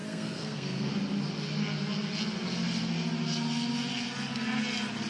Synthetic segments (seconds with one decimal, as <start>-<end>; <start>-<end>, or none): 0.0-0.9